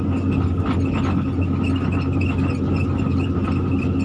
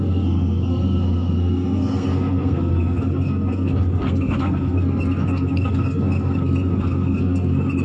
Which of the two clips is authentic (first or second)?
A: first